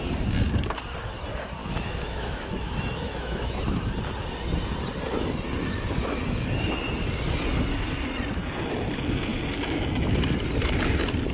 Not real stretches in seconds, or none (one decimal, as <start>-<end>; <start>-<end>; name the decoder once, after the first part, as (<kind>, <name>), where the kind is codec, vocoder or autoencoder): 1.6-3.6 (autoencoder, DAC-VAE)